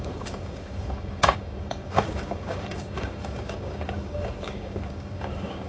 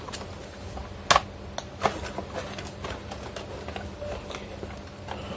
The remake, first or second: first